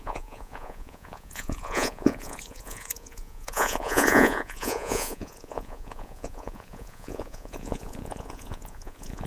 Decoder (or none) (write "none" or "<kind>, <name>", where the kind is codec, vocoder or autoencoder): vocoder, Vocos